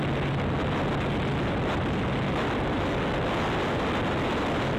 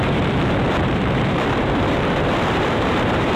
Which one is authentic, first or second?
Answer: first